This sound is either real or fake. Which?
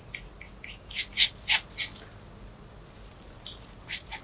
real